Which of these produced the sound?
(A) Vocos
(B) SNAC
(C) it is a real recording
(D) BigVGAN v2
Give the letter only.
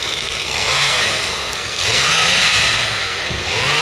B